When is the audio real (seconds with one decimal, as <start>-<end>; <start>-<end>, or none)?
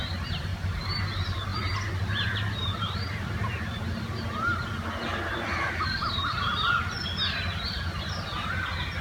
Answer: 0.0-0.5; 1.0-1.5; 3.8-5.1; 6.8-9.0